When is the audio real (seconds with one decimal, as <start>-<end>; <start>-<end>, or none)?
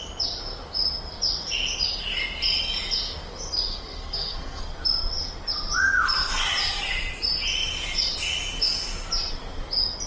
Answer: 0.0-3.7; 4.6-10.1